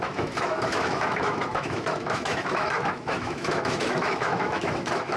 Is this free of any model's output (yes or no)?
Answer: no